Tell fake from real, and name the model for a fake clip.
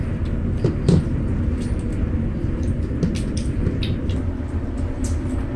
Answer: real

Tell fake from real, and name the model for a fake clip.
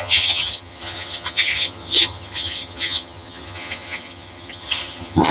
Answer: fake, vocoder, HiFi-GAN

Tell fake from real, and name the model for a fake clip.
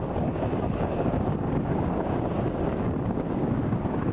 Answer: fake, codec, DAC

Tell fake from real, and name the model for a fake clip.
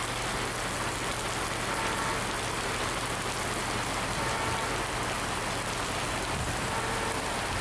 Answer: real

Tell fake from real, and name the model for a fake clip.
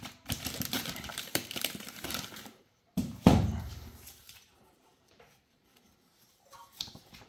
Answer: fake, vocoder, BigVGAN v2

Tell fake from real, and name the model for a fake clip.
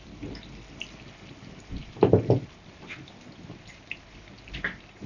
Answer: fake, vocoder, BigVGAN v2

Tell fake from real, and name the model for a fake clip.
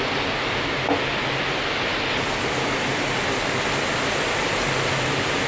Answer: real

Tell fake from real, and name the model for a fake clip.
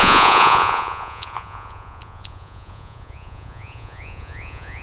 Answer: fake, vocoder, Vocos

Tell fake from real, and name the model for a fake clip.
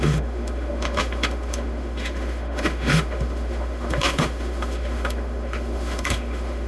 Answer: fake, autoencoder, DAC-VAE